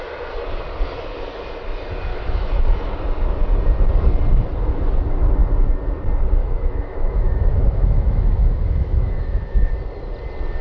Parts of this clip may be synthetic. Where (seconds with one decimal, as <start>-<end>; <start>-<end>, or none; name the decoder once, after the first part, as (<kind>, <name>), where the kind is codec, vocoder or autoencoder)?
2.1-2.6 (autoencoder, DAC-VAE); 6.4-9.7